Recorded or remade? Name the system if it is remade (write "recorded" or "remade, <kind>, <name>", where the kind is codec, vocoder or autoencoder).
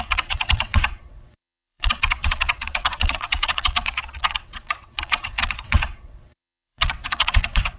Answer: remade, vocoder, WaveNeXt